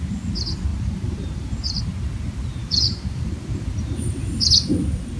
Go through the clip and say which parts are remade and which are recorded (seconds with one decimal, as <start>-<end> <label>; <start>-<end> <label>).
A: 0.0-0.7 recorded; 0.7-1.8 remade; 1.8-2.6 recorded; 2.6-4.7 remade; 4.7-5.2 recorded